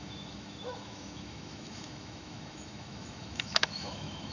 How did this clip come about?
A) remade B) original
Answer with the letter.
A